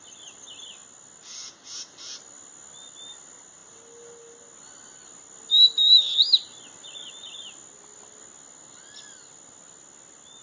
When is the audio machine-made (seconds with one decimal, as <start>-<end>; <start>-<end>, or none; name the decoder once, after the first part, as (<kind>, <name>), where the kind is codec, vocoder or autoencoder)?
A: none